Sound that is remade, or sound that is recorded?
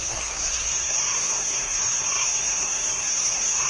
remade